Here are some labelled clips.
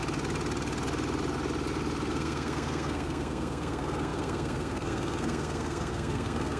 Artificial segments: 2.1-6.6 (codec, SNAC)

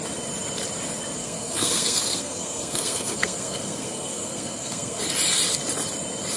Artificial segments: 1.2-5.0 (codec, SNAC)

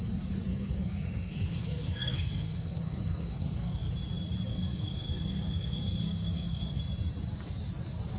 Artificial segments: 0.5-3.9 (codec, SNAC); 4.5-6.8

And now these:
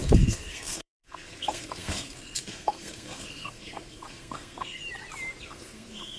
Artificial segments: 0.0-4.8 (codec, SNAC); 5.4-6.2

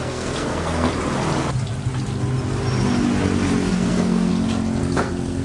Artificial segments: 0.0-0.9 (codec, SNAC); 3.7-4.3; 4.8-5.4

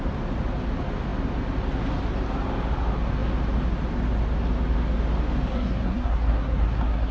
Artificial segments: 5.5-7.1 (codec, SNAC)

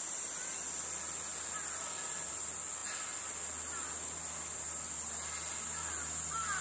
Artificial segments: none